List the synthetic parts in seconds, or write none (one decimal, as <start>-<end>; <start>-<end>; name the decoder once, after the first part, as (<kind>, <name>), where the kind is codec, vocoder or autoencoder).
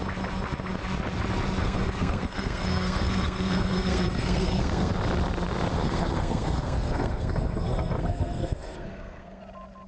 1.6-4.9 (codec, SNAC); 5.7-9.4